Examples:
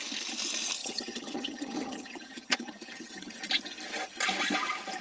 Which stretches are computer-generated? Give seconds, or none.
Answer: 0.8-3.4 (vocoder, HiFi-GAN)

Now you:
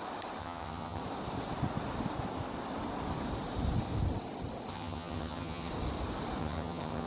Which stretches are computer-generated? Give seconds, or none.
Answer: 0.4-1.0 (vocoder, HiFi-GAN); 4.7-5.7; 6.4-7.1

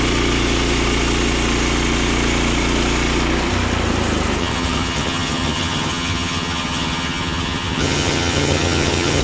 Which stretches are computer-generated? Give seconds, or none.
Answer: 4.4-9.2 (vocoder, HiFi-GAN)